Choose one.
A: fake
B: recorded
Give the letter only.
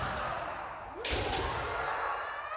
B